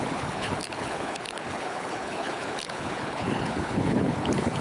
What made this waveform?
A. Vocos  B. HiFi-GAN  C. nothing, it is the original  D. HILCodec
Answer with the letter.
D